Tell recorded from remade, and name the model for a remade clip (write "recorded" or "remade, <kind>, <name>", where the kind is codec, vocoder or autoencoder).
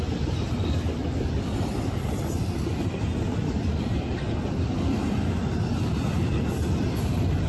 remade, vocoder, BigVGAN v2